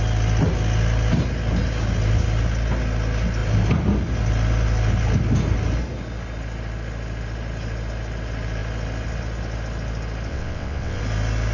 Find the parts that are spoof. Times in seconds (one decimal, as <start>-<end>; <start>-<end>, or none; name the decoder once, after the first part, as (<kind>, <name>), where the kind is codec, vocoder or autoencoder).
10.3-11.0 (vocoder, WaveNeXt)